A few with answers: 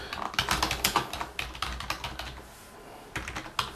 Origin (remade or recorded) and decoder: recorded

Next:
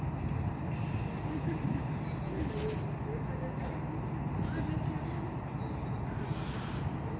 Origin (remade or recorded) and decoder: recorded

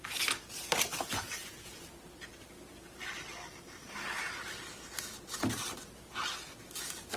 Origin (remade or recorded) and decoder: recorded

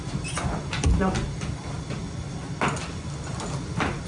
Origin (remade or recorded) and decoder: recorded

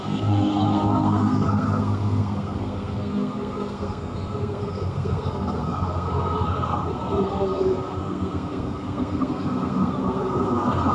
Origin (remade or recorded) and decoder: remade, codec, SNAC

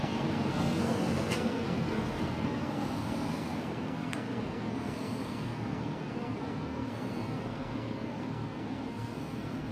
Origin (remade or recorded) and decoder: remade, codec, SNAC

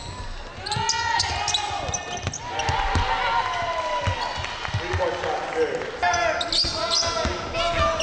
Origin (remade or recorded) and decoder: recorded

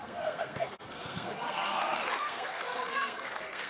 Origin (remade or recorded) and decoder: remade, codec, SNAC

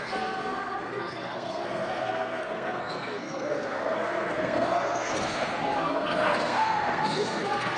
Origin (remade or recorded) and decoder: remade, codec, SNAC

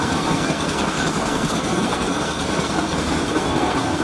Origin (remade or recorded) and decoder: remade, codec, SNAC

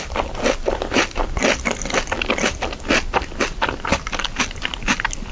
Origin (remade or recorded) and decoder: recorded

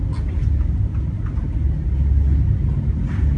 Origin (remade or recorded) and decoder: recorded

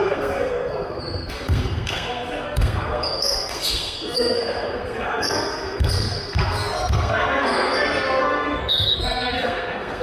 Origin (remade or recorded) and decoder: remade, codec, SNAC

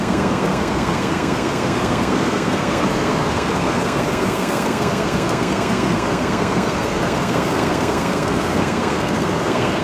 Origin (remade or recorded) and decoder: remade, codec, SNAC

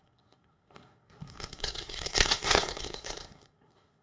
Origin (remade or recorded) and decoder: remade, codec, SNAC